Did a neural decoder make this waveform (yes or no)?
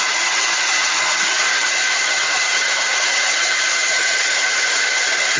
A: yes